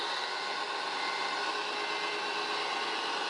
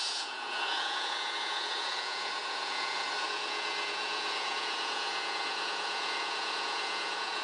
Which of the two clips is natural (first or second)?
first